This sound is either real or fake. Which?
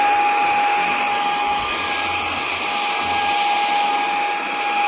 real